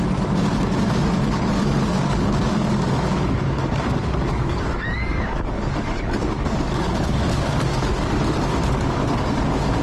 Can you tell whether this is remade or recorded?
remade